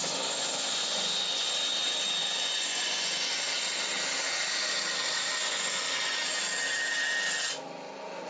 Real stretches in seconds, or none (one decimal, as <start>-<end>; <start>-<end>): 1.5-2.2; 3.3-5.4; 6.3-8.3